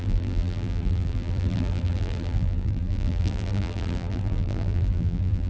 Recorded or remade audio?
remade